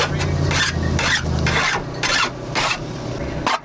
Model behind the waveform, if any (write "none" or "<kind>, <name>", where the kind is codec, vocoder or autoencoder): none